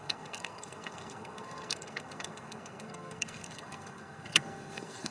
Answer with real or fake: fake